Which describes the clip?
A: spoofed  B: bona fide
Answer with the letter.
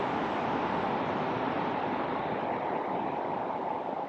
B